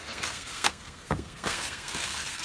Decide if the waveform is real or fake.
fake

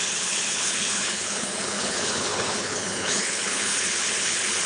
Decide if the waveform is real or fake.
fake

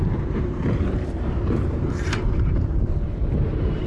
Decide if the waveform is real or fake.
fake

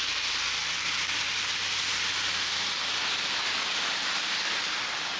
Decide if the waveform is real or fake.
real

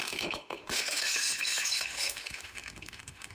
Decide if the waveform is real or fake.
fake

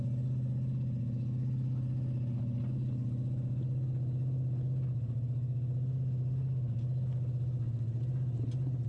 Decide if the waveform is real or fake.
real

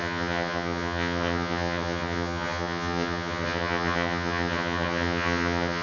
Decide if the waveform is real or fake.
fake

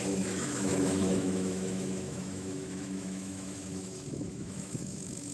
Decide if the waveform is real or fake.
fake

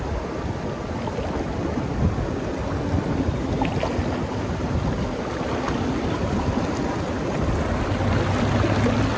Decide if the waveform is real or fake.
real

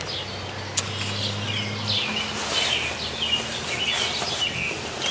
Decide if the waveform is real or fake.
real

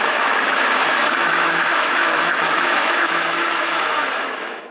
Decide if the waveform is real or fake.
fake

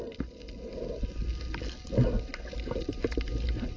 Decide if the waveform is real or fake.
real